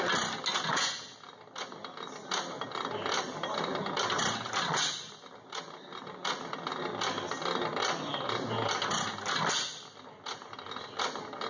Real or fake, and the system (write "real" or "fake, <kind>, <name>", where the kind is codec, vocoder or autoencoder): real